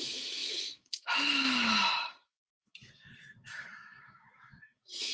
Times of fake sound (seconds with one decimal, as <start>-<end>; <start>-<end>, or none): 0.0-5.1